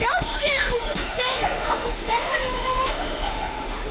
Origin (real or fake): fake